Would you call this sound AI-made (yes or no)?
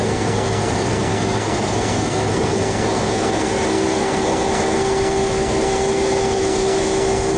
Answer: yes